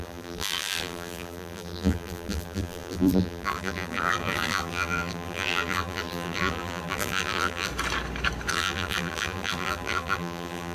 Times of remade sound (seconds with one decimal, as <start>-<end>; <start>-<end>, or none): 0.0-7.7; 8.5-10.7